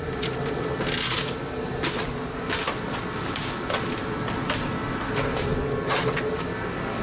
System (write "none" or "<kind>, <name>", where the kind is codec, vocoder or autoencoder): none